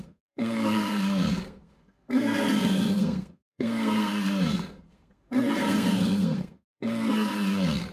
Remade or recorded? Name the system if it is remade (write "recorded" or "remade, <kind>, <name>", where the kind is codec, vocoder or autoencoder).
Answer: remade, codec, SNAC